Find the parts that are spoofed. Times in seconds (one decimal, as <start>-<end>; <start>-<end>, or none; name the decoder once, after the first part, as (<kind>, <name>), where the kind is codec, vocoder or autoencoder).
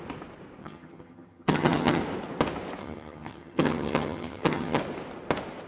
0.6-2.0 (vocoder, HiFi-GAN); 2.8-4.8